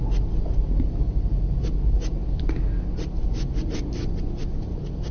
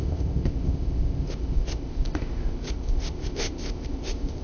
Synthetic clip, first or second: second